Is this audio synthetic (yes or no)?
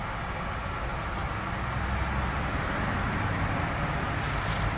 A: no